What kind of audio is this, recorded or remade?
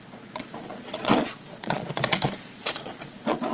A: remade